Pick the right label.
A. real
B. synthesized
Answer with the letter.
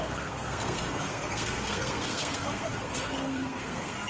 B